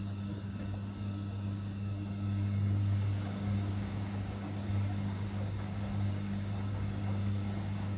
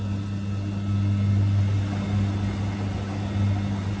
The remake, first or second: first